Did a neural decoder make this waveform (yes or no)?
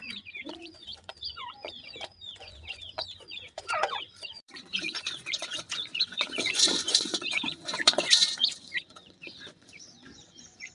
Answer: yes